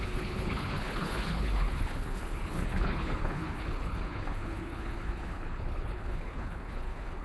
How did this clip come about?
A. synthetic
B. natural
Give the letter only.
A